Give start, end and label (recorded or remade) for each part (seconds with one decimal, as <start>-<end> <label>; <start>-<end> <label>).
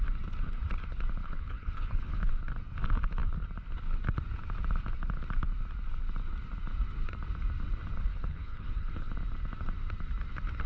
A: 0.0-1.2 recorded; 1.2-2.3 remade; 2.3-8.1 recorded; 8.1-9.1 remade; 9.1-10.7 recorded